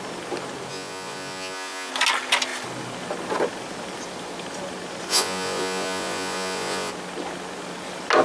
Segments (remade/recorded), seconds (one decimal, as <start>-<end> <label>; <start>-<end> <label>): 0.0-0.7 recorded; 0.7-1.9 remade; 1.9-5.1 recorded; 5.1-6.9 remade; 6.9-8.2 recorded